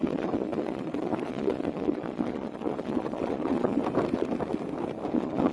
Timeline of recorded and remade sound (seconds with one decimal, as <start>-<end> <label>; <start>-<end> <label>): 0.0-3.8 remade; 3.8-5.1 recorded; 5.1-5.5 remade